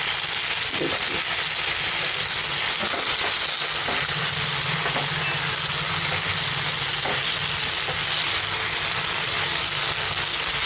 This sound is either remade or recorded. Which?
recorded